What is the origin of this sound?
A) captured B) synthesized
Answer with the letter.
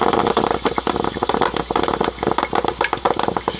A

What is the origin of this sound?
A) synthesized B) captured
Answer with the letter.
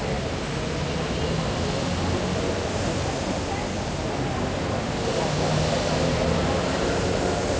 B